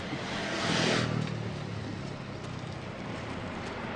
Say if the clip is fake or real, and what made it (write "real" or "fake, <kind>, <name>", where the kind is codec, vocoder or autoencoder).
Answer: real